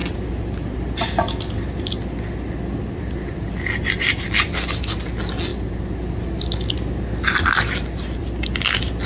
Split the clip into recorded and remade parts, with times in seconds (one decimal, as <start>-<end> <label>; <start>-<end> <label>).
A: 0.0-9.1 recorded